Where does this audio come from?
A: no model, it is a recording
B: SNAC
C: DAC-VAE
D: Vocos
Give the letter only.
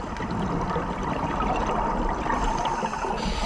A